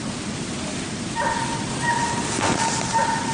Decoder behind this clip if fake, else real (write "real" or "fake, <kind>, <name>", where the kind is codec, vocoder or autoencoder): real